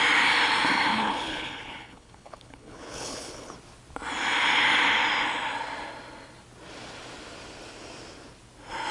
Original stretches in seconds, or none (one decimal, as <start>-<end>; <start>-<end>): 0.0-0.9; 3.5-8.9